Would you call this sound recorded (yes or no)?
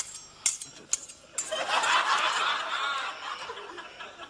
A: yes